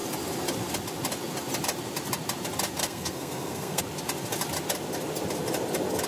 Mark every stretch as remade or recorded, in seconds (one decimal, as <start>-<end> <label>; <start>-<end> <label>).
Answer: 0.0-2.8 recorded; 2.8-3.8 remade; 3.8-6.1 recorded